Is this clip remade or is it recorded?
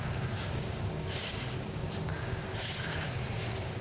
remade